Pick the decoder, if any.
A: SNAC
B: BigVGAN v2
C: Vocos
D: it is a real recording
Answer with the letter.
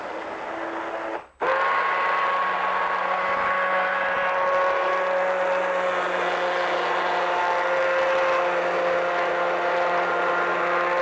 D